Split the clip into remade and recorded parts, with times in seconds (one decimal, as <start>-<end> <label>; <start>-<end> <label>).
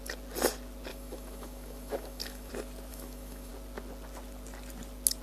0.0-0.9 recorded; 0.9-2.5 remade; 2.5-2.9 recorded; 2.9-3.5 remade; 3.5-5.2 recorded